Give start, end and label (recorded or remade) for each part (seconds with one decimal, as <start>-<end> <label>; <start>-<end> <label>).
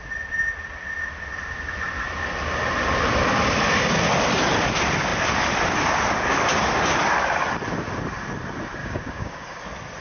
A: 0.0-8.8 recorded; 8.8-9.6 remade; 9.6-10.0 recorded